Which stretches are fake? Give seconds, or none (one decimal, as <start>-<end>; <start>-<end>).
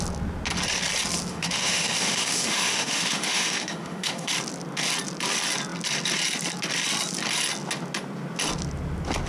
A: 1.3-4.3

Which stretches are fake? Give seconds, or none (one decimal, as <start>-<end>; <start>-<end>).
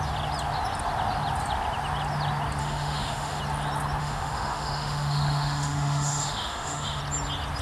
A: 2.6-3.4; 4.0-7.0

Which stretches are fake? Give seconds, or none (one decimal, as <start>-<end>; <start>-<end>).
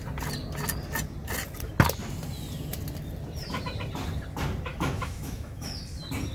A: 4.7-5.8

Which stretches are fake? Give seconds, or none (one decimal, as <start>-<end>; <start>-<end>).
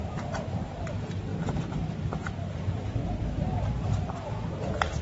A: none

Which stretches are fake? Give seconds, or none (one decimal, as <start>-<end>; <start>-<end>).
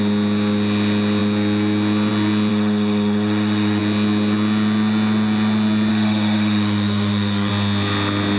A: 2.5-3.8; 5.9-7.5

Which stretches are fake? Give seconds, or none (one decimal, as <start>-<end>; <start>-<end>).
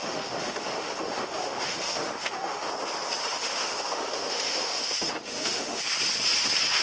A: 0.0-2.7; 3.2-5.8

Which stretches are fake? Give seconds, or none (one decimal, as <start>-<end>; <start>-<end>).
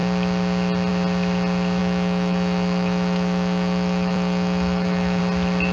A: 1.8-5.2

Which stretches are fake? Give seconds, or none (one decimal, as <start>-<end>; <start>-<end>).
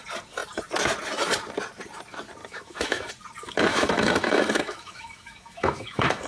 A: 2.4-3.1; 3.7-6.3